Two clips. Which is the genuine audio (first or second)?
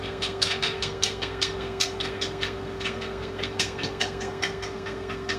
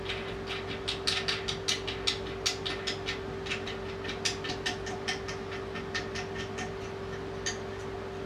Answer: second